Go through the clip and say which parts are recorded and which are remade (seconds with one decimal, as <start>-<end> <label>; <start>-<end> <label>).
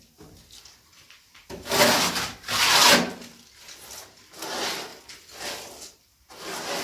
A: 0.0-6.8 recorded